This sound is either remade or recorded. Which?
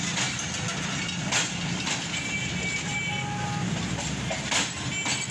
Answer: recorded